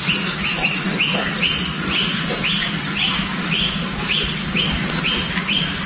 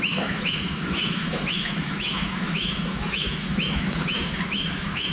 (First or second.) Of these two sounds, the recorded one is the first